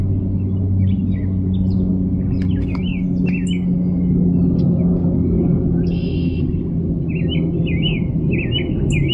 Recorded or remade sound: recorded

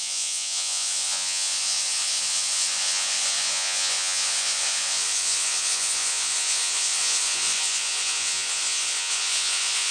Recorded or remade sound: remade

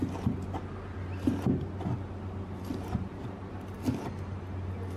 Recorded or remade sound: recorded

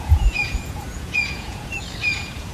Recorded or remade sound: remade